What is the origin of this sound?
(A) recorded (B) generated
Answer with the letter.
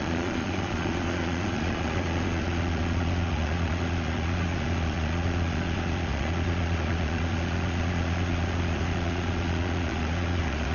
B